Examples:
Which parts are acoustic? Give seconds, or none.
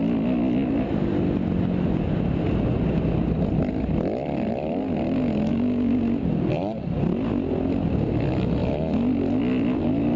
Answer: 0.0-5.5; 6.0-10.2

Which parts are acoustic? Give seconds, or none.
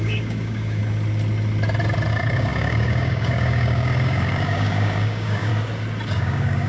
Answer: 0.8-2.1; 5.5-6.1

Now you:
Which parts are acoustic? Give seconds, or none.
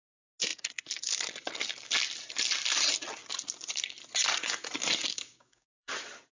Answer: 0.0-5.1; 5.9-6.4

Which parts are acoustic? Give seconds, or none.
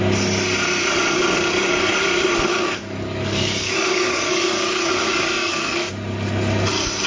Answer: 0.0-2.5; 4.9-5.4; 5.9-7.1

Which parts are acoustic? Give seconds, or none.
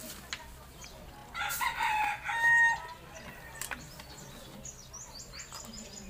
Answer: 0.0-6.1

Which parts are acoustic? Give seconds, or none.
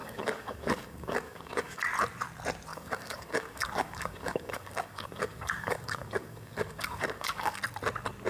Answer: 1.8-2.7; 7.6-8.3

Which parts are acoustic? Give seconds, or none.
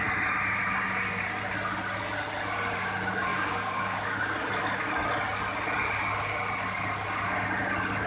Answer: 0.0-3.3; 4.5-8.1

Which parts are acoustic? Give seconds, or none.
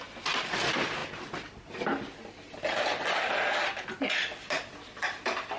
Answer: 0.0-5.6